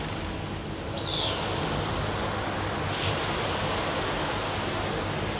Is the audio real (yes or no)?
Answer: yes